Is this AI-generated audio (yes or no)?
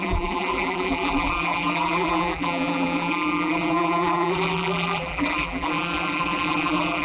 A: yes